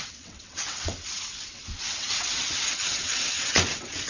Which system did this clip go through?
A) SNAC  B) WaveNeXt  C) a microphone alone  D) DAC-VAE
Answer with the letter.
B